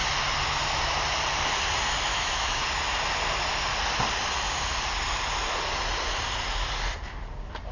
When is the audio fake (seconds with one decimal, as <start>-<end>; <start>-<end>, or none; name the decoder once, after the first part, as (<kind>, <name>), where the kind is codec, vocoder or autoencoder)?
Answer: 2.1-2.6 (autoencoder, DAC-VAE)

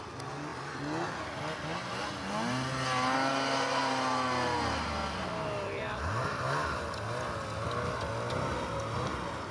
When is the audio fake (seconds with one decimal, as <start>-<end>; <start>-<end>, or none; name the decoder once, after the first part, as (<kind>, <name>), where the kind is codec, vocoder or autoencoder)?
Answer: none